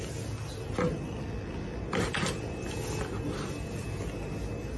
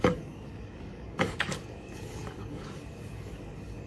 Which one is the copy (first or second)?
second